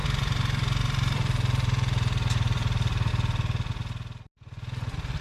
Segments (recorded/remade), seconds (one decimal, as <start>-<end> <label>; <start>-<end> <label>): 0.0-3.1 remade; 3.1-5.2 recorded

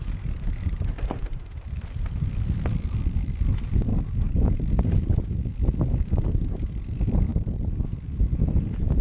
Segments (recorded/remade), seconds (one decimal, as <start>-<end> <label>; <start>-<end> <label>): 0.0-3.9 remade; 3.9-5.4 recorded; 5.4-9.0 remade

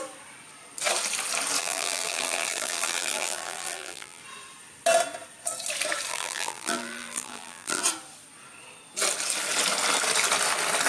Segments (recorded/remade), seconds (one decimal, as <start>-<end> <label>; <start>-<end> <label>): 0.0-1.6 recorded; 1.6-4.2 remade; 4.2-6.1 recorded; 6.1-7.8 remade; 7.8-10.9 recorded

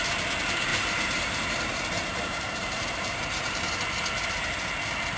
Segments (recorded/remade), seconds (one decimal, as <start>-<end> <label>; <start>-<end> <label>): 0.0-0.7 recorded; 0.7-3.8 remade; 3.8-5.2 recorded

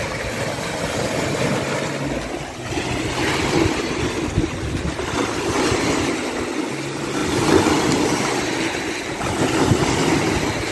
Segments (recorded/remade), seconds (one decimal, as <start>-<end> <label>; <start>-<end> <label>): 0.0-10.7 recorded

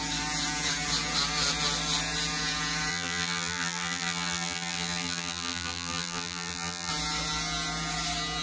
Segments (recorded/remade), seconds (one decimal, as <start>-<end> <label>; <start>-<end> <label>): 0.0-2.9 recorded; 2.9-6.9 remade; 6.9-8.4 recorded